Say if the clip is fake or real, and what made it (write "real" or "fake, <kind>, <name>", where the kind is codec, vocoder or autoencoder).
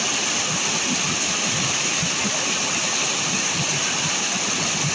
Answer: real